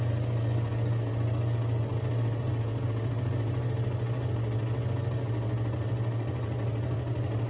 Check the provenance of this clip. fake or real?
real